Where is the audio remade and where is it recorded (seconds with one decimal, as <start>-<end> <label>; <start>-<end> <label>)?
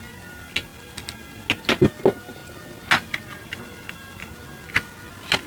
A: 0.0-5.5 recorded